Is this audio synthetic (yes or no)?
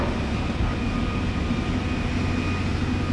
no